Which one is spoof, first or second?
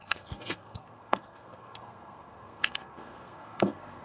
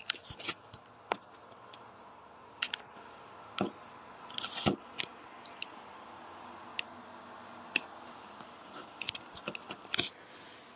first